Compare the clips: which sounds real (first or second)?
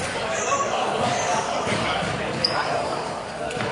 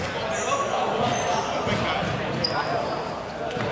second